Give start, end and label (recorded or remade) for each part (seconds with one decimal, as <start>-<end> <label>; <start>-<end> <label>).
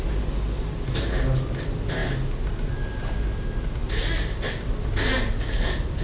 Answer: 0.0-6.0 recorded